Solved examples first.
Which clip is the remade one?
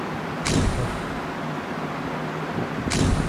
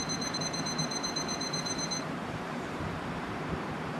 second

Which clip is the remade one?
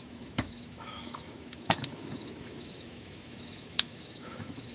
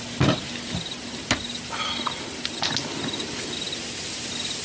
first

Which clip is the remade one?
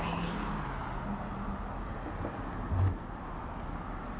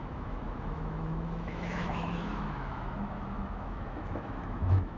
second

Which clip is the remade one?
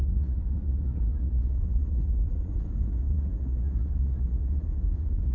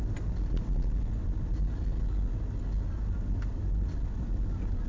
first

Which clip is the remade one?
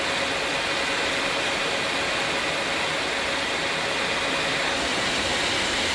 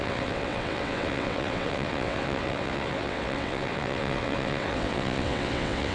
second